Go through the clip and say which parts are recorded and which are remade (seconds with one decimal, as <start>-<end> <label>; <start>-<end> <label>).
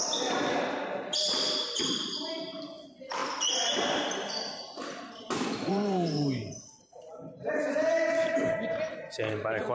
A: 0.0-3.2 remade; 3.2-5.7 recorded; 5.7-9.7 remade